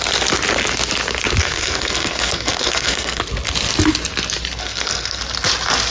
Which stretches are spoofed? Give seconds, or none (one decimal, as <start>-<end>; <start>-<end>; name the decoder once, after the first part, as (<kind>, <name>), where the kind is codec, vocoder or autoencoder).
1.4-3.2 (codec, SNAC); 4.6-5.2